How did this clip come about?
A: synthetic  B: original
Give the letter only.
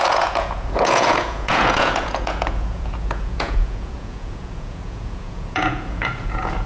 A